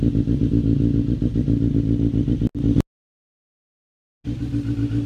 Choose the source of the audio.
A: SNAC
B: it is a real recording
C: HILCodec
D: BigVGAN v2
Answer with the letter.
B